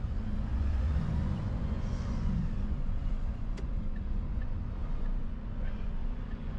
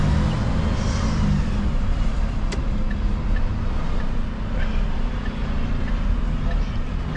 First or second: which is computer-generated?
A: first